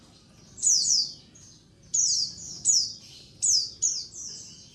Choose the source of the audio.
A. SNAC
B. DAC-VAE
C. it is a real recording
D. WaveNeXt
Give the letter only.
C